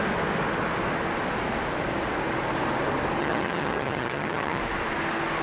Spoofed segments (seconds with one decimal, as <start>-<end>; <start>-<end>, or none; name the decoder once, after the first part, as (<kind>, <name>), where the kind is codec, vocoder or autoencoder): 3.2-4.6 (vocoder, HiFi-GAN)